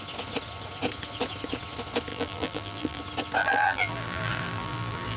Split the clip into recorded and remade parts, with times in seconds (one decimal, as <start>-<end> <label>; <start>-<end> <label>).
0.0-2.1 recorded; 2.1-3.0 remade; 3.0-3.4 recorded; 3.4-5.2 remade